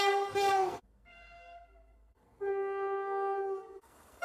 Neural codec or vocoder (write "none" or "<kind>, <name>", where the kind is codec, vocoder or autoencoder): codec, SNAC